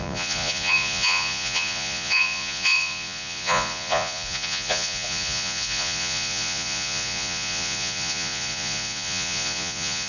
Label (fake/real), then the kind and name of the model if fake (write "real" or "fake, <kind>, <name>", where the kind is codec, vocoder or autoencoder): fake, vocoder, Vocos